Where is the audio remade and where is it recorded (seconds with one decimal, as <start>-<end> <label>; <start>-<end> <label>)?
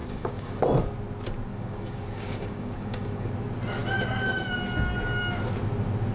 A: 0.0-0.6 remade; 0.6-1.5 recorded; 1.5-3.3 remade; 3.3-6.1 recorded